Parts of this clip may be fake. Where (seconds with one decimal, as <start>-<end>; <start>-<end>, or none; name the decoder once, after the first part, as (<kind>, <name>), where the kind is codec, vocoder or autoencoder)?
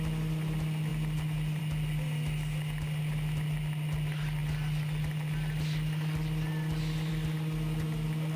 none